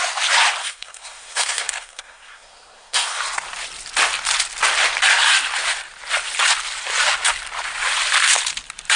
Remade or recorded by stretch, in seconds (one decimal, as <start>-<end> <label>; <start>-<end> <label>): 0.0-0.6 recorded; 0.6-3.2 remade; 3.2-9.0 recorded